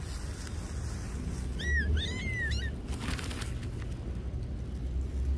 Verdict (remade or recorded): recorded